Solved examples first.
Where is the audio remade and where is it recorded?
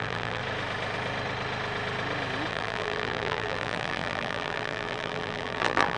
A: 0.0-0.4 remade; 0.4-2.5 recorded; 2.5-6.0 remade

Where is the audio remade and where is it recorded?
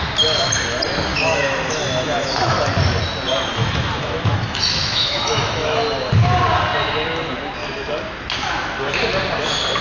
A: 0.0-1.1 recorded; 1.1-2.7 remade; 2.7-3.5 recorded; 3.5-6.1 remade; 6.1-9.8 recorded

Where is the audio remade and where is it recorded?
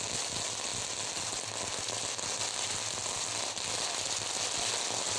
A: 0.0-5.2 recorded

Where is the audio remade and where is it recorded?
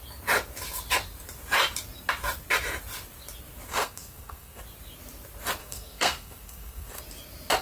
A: 0.0-3.7 recorded; 3.7-4.6 remade; 4.6-5.6 recorded; 5.6-7.0 remade; 7.0-7.6 recorded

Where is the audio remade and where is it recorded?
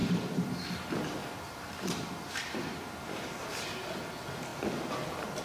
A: 0.0-0.6 remade; 0.6-1.2 recorded; 1.2-3.3 remade; 3.3-5.4 recorded